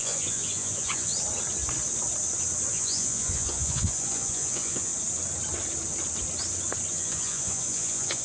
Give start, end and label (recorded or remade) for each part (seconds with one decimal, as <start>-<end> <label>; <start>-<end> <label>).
0.0-1.1 remade; 1.1-2.7 recorded; 2.7-4.9 remade; 4.9-6.9 recorded; 6.9-8.2 remade

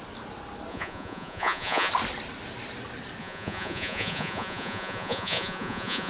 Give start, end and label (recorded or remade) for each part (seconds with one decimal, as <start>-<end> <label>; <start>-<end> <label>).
0.0-0.7 recorded; 0.7-1.9 remade; 1.9-3.2 recorded; 3.2-6.1 remade

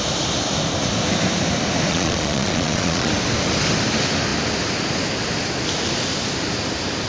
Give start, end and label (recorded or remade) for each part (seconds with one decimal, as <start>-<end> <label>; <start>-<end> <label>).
0.0-1.9 recorded; 1.9-3.1 remade; 3.1-7.1 recorded